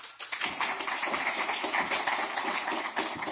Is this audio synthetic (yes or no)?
no